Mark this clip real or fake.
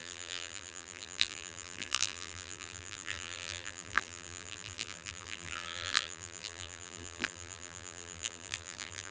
fake